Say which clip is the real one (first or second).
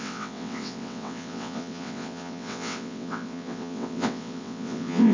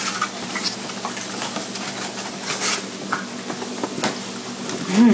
second